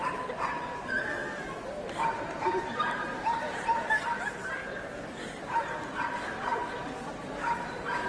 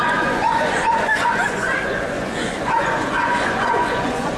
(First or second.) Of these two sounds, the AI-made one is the second